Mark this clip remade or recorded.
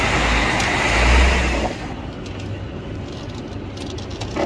recorded